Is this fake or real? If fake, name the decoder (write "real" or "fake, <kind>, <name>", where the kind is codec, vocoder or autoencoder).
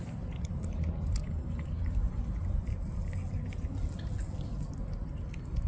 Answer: real